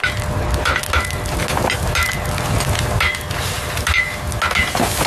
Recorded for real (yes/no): yes